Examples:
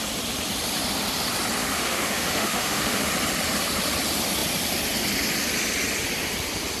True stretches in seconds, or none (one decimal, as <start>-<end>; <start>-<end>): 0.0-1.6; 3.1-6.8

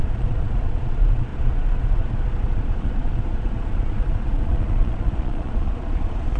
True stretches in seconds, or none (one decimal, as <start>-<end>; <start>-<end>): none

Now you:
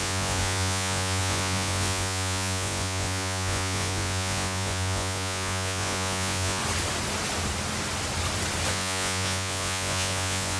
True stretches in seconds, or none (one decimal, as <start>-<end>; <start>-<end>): 6.6-8.7